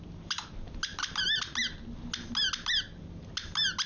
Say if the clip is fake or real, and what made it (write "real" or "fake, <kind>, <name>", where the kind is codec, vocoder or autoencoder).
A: real